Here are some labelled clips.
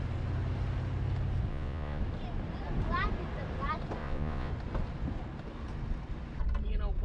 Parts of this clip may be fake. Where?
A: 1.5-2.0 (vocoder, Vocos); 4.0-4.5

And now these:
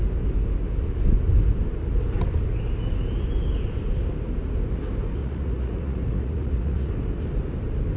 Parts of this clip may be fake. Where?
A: 5.2-6.9 (vocoder, Vocos)

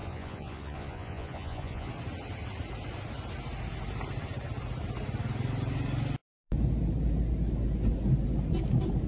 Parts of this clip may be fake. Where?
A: 0.0-1.9 (vocoder, Vocos)